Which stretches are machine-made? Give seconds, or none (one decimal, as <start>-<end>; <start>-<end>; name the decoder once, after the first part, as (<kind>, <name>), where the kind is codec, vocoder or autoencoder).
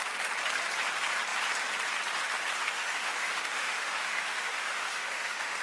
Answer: 2.6-5.6 (autoencoder, DAC-VAE)